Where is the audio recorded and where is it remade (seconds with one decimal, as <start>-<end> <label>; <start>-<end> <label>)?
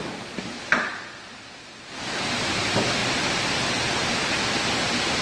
0.0-5.2 recorded